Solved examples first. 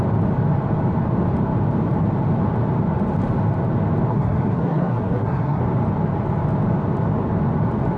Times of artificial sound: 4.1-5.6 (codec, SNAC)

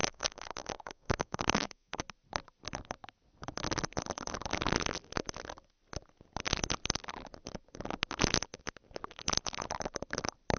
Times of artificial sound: 0.0-2.0 (codec, SNAC)

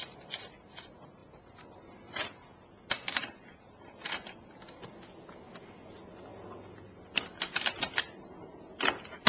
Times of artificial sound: none

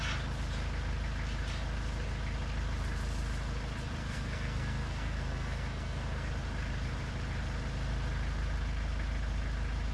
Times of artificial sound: 4.0-6.3 (codec, SNAC)

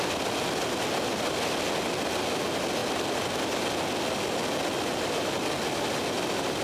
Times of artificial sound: none

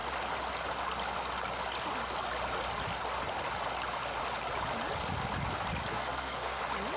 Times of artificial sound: 5.9-6.6 (codec, SNAC)